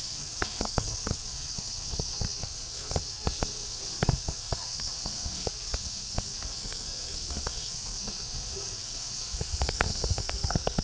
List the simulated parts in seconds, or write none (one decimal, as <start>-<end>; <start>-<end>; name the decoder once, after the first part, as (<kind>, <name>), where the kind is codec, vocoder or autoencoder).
0.0-10.8 (codec, SNAC)